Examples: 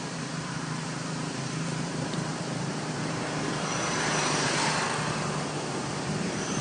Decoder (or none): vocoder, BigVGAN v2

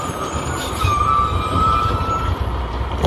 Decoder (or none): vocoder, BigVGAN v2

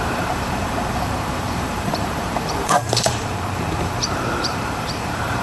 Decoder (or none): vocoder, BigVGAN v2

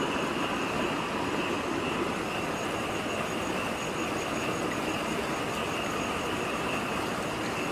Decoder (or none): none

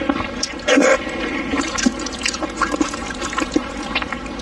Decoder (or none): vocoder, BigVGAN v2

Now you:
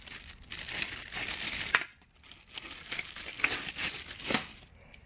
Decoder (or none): none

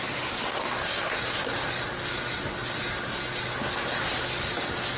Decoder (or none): none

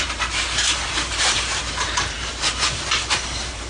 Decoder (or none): vocoder, BigVGAN v2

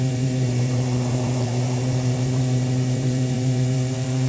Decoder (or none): vocoder, BigVGAN v2